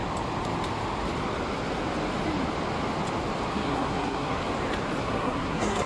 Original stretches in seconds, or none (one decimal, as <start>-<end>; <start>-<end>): 0.0-3.5; 4.4-5.0